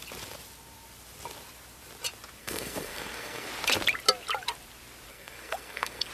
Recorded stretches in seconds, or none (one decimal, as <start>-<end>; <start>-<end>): 0.0-2.4; 3.5-5.1